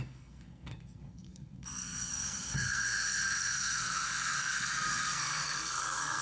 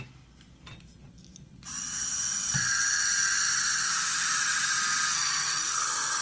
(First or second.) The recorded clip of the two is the second